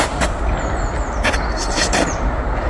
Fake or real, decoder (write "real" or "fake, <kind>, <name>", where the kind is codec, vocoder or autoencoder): real